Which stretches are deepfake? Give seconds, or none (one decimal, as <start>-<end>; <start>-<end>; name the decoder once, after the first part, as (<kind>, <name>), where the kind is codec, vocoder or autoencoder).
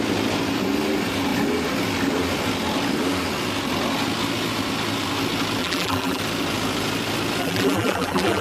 5.6-6.2 (vocoder, BigVGAN v2); 7.4-8.4